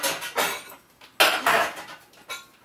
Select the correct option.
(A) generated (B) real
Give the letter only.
B